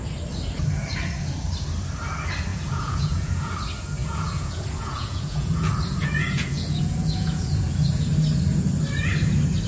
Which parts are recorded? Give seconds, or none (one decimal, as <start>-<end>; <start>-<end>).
0.0-2.5; 3.5-4.0; 8.1-9.7